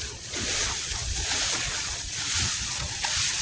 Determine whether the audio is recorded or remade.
remade